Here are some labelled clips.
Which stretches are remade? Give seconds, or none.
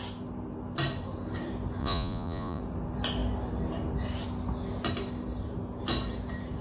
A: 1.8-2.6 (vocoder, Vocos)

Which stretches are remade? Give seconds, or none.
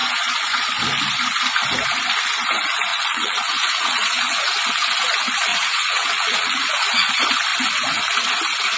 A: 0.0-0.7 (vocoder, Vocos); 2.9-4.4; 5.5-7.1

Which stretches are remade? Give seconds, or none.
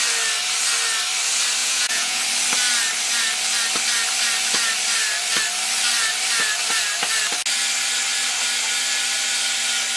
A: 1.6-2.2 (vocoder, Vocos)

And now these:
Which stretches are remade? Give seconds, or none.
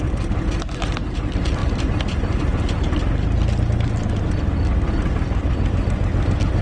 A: none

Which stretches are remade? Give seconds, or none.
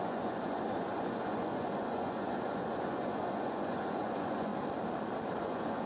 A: 0.0-4.5 (vocoder, Vocos); 5.4-5.9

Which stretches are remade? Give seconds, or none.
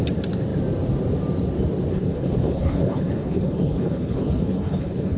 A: 1.9-5.2 (codec, HILCodec)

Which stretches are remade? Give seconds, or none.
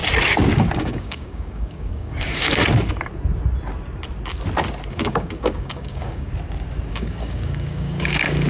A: 0.8-2.6 (codec, DAC); 4.9-6.3; 6.9-8.5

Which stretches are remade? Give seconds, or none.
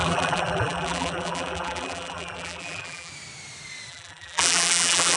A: 0.0-3.1 (vocoder, BigVGAN v2); 3.9-5.2